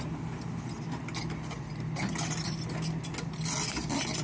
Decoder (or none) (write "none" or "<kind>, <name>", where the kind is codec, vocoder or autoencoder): none